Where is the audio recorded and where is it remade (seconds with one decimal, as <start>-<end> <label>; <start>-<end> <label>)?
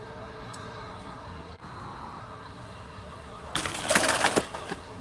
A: 0.0-1.6 remade; 1.6-2.2 recorded; 2.2-3.5 remade; 3.5-4.4 recorded; 4.4-5.0 remade